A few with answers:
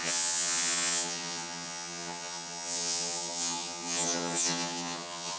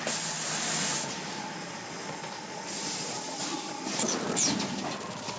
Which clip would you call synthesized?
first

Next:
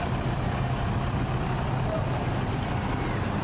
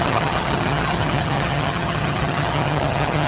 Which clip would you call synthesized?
second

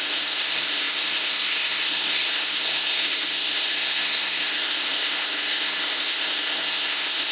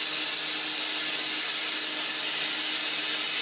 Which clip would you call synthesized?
first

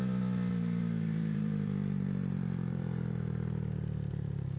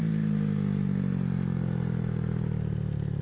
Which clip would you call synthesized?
first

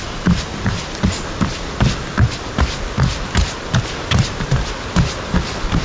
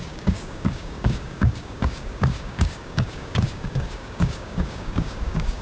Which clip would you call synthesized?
second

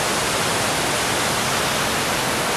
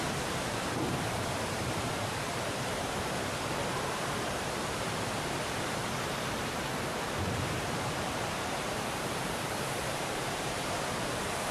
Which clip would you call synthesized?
second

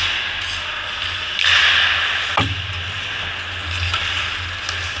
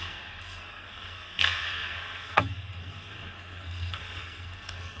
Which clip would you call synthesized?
second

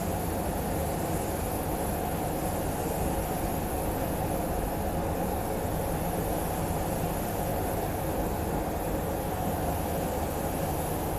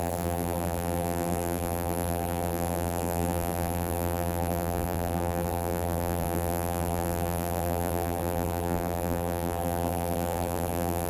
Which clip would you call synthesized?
second